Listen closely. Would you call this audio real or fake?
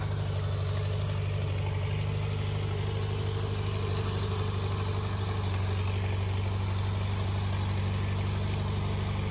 real